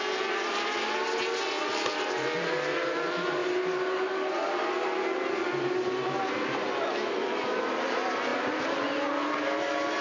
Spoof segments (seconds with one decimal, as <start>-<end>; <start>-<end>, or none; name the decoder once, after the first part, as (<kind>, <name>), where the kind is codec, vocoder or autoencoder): none